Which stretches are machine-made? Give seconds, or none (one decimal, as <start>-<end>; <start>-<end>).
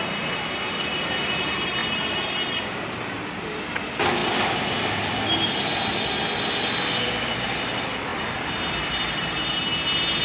1.8-2.8